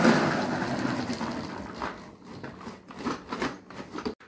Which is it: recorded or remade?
recorded